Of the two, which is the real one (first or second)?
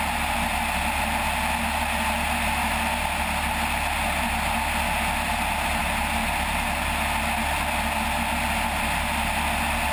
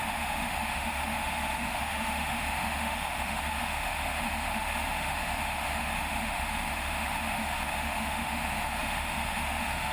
first